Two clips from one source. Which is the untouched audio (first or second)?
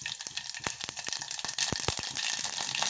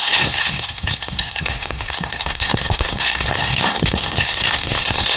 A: first